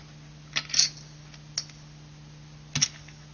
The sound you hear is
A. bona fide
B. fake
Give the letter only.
A